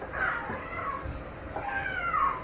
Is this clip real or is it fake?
real